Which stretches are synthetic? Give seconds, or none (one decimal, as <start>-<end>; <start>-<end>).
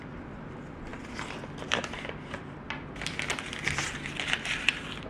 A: none